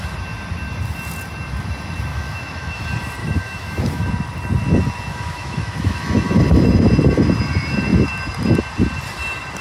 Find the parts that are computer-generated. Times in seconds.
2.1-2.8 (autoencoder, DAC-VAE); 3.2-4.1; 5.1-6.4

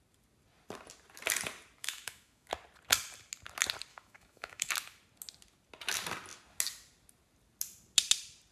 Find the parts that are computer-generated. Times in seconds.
1.8-2.5 (autoencoder, DAC-VAE); 3.9-4.7